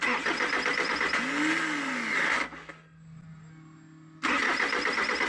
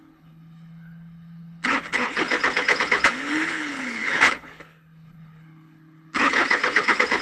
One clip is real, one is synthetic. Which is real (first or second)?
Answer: first